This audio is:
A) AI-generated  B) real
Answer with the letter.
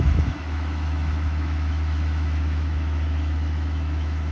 A